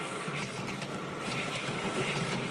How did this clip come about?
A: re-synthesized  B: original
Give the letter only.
B